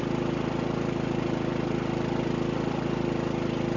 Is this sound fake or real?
real